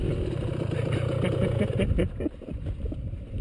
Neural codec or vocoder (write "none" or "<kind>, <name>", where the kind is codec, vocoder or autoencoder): none